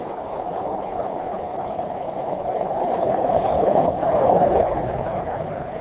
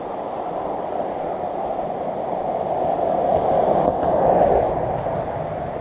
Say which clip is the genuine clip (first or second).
second